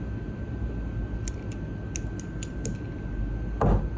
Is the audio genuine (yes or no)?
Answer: yes